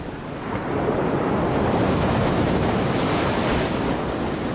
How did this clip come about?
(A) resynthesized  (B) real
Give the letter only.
B